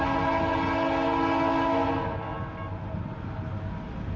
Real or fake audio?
real